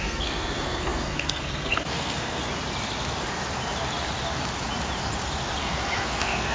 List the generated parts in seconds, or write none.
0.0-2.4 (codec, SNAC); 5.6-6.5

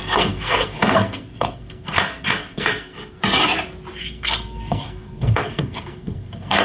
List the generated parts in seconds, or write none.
0.0-3.2 (codec, SNAC); 4.0-6.6

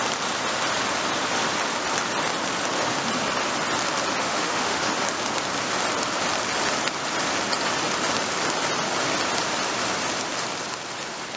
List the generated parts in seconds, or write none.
4.2-4.9 (autoencoder, DAC-VAE)

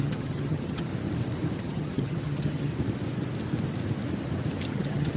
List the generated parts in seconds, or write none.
0.0-0.9 (vocoder, HiFi-GAN); 1.6-2.7; 4.7-5.2

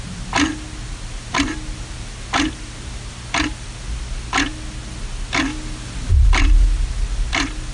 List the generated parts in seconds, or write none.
none

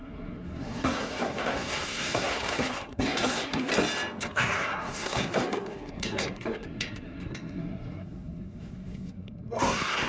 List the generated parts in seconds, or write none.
0.0-3.7 (codec, SNAC); 4.2-10.1

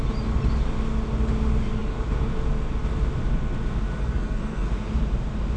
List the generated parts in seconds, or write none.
4.0-4.7 (codec, SNAC)

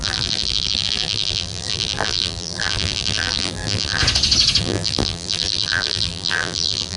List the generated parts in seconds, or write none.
0.0-4.0 (vocoder, BigVGAN v2); 4.6-7.0